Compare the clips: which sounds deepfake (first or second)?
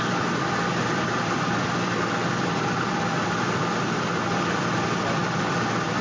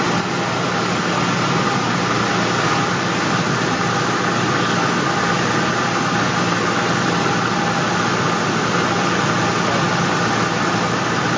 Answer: first